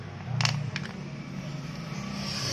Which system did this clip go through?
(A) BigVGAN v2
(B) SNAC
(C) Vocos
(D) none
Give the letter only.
D